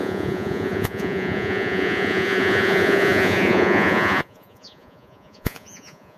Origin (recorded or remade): remade